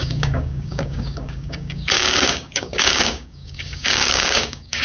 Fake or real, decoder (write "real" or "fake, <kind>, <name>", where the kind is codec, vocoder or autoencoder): fake, codec, DAC